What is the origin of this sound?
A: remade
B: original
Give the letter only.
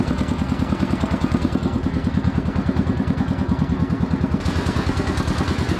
A